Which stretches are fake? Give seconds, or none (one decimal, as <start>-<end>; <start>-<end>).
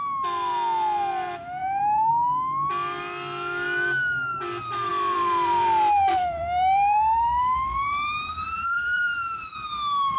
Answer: 1.6-2.1; 4.9-9.5